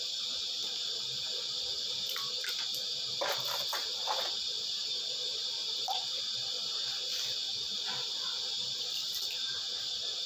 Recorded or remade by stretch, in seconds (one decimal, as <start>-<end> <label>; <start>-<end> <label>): 0.0-10.3 recorded